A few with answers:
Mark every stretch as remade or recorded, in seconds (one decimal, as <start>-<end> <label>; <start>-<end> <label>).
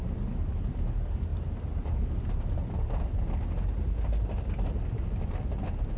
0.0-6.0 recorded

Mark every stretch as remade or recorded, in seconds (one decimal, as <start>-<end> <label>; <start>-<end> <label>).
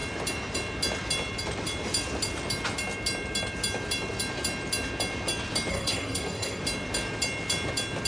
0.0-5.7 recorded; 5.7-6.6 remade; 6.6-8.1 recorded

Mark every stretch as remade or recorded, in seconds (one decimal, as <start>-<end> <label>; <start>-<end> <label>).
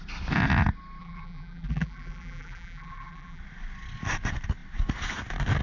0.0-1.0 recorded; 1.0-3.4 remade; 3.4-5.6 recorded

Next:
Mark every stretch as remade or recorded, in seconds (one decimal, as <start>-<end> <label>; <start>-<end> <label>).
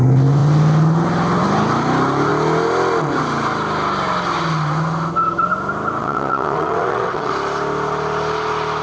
0.0-6.0 recorded; 6.0-7.3 remade; 7.3-8.8 recorded